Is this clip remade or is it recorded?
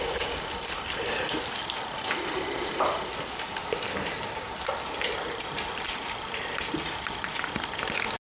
recorded